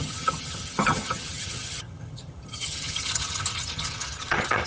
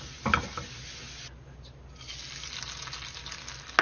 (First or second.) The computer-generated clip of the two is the first